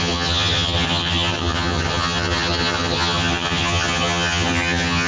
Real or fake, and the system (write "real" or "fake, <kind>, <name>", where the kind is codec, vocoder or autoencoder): fake, vocoder, HiFi-GAN